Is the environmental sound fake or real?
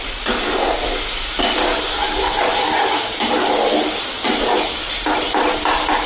real